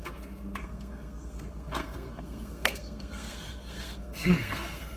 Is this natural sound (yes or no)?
no